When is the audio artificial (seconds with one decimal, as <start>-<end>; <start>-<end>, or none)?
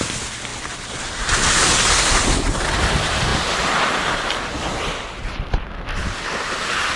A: none